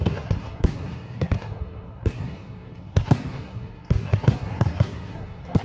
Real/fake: fake